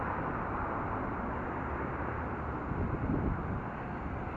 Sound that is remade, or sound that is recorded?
recorded